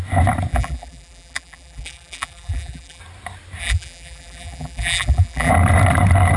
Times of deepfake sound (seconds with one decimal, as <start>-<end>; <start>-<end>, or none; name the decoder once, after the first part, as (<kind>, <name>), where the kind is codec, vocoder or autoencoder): 0.5-3.0 (vocoder, BigVGAN v2); 3.6-5.5